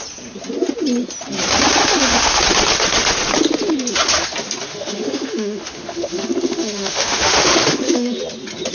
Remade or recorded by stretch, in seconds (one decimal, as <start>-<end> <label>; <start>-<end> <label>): 0.0-1.8 recorded; 1.8-2.4 remade; 2.4-4.7 recorded; 4.7-8.2 remade; 8.2-8.7 recorded